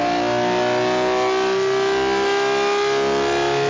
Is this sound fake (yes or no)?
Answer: no